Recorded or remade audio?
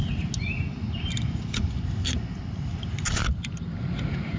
recorded